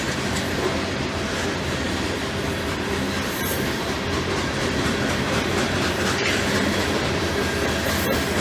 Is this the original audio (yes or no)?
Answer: yes